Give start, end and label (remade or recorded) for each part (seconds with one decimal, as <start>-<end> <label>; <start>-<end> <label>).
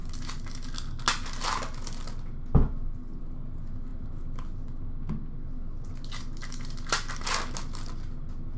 0.0-8.6 recorded